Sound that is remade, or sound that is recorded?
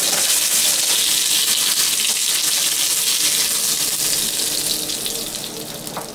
recorded